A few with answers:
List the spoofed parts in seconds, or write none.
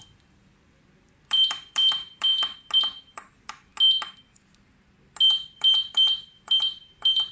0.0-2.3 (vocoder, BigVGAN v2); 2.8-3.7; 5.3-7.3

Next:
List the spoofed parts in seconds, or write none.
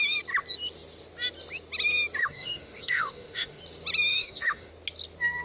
2.2-3.6 (autoencoder, DAC-VAE); 4.1-4.7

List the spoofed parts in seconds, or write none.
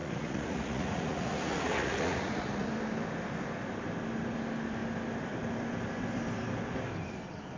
0.0-2.7 (vocoder, Vocos)